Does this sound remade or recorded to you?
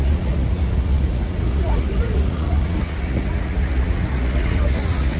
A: remade